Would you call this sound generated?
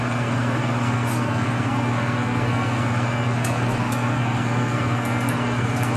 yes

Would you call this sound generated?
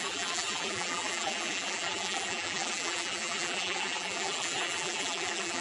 yes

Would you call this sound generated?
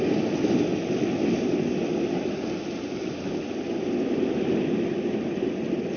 no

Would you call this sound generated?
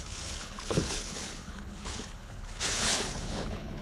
yes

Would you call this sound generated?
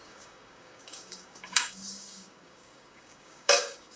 yes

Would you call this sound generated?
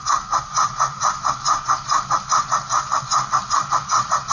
yes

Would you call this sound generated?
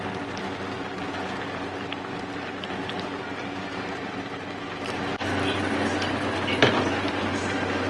no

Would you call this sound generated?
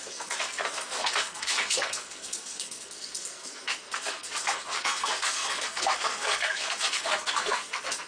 yes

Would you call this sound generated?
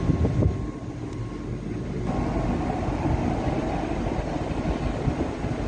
no